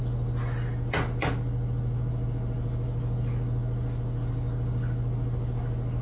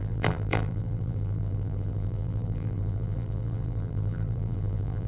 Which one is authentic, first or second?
first